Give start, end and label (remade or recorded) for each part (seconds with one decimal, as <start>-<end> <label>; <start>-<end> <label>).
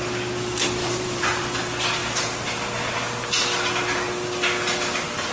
0.0-0.8 recorded; 0.8-1.5 remade; 1.5-5.3 recorded